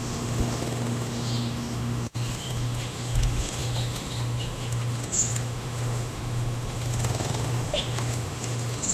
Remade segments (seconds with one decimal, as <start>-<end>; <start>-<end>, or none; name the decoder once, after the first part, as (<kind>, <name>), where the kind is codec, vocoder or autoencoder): 0.0-8.9 (autoencoder, DAC-VAE)